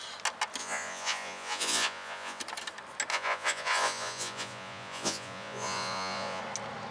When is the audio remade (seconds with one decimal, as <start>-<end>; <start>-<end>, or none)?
0.6-2.4; 3.1-6.4